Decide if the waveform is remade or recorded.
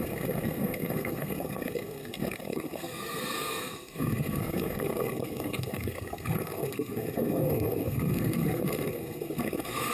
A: remade